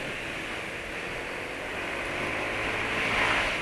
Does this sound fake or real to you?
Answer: real